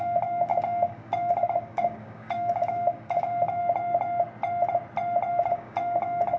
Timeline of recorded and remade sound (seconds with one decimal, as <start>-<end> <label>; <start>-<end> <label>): 0.0-3.6 remade; 3.6-5.3 recorded; 5.3-6.4 remade